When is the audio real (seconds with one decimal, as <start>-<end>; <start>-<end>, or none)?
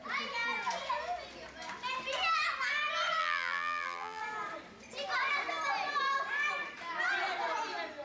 0.0-3.2; 4.2-8.0